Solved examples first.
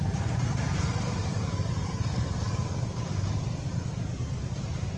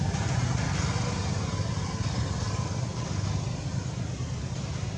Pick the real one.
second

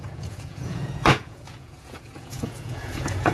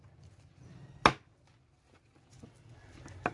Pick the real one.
second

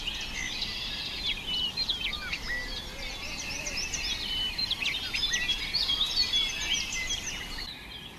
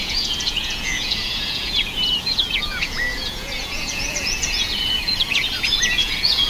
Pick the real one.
first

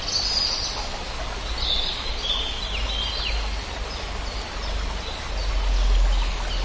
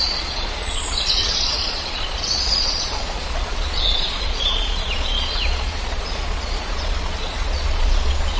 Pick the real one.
first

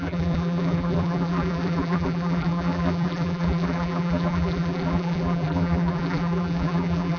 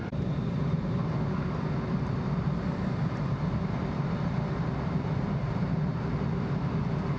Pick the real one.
second